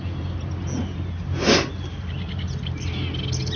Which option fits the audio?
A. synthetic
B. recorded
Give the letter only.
B